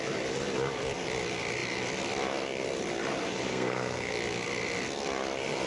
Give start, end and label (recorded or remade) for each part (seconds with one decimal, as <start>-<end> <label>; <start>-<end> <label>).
0.0-3.5 recorded; 3.5-4.1 remade; 4.1-5.7 recorded